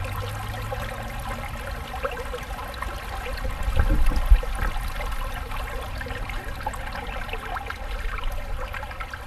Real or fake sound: real